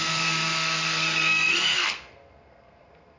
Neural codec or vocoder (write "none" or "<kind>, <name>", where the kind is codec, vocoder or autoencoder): codec, SNAC